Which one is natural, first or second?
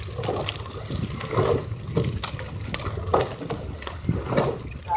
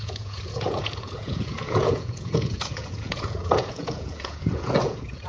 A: first